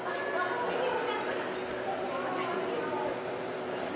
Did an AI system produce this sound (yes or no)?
no